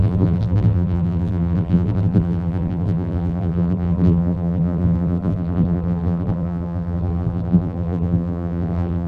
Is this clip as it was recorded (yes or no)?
no